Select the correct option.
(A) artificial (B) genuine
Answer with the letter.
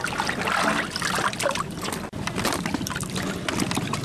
B